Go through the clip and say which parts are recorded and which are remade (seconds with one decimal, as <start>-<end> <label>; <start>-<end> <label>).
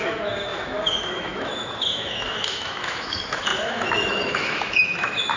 0.0-5.4 remade